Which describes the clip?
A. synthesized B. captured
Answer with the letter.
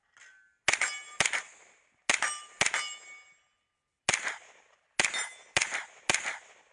B